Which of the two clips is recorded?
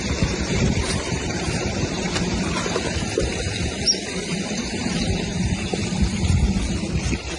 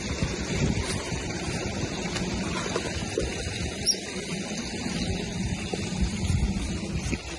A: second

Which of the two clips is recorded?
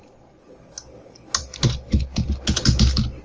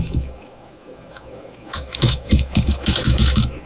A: first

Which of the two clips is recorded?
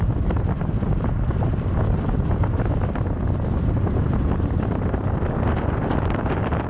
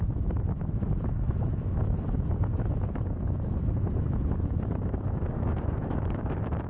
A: first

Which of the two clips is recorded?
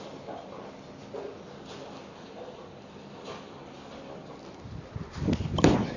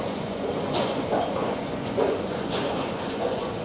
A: first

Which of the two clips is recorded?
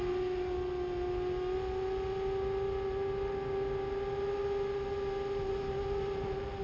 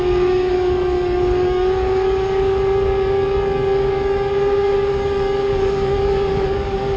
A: first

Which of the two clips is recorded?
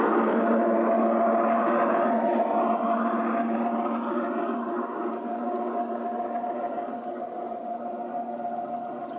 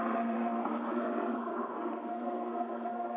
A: first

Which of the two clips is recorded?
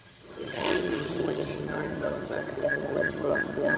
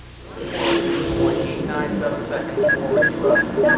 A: second